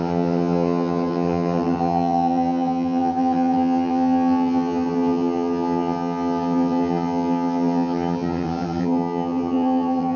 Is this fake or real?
fake